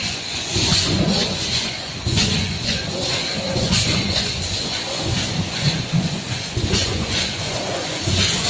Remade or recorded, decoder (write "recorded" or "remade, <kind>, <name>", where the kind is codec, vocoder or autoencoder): remade, vocoder, Vocos